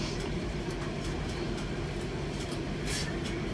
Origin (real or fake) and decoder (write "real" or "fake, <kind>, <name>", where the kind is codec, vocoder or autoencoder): fake, vocoder, BigVGAN v2